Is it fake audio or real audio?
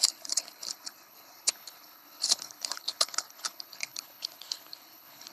fake